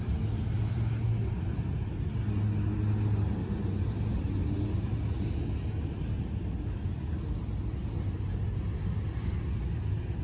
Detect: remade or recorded recorded